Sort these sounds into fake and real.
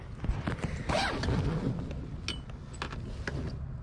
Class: real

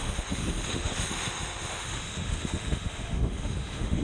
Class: fake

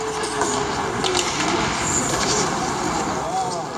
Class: real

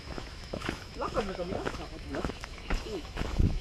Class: fake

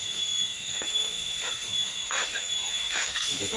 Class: fake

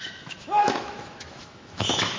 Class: fake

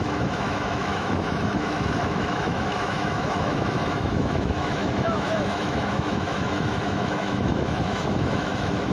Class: fake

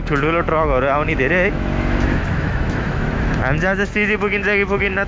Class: fake